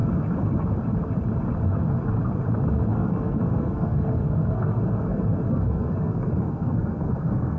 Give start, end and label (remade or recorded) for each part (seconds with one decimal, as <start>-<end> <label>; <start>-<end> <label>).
0.0-2.9 recorded; 2.9-7.6 remade